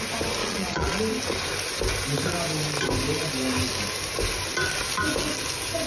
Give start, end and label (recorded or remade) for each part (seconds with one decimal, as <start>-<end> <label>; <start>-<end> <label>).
0.0-0.4 recorded; 0.4-1.0 remade; 1.0-5.9 recorded